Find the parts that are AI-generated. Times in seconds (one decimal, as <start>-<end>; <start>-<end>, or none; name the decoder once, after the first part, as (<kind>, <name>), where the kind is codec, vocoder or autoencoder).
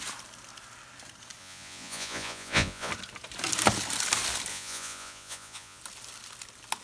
1.4-2.9 (vocoder, Vocos); 4.5-5.8